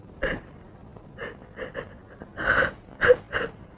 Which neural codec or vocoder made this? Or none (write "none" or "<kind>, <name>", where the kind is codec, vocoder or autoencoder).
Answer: none